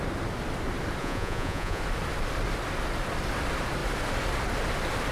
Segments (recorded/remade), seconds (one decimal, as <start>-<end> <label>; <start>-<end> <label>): 0.0-1.0 recorded; 1.0-1.8 remade; 1.8-5.1 recorded